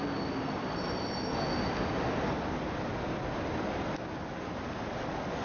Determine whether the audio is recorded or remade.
recorded